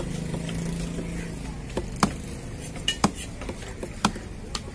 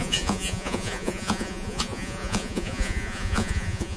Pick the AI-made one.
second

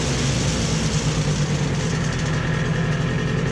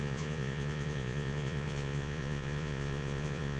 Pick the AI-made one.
second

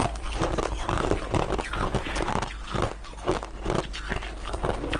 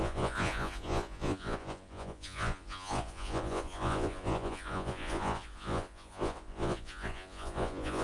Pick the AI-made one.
second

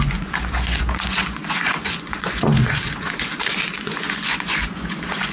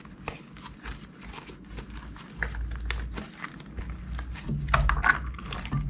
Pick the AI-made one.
first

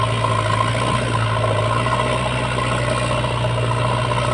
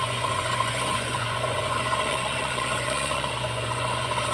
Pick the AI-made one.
second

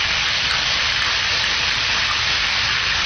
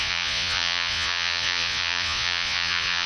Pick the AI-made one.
second